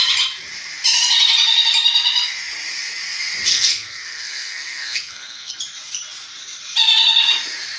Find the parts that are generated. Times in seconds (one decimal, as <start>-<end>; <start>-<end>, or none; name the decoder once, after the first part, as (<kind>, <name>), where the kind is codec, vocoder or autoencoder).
3.5-5.5 (codec, SNAC)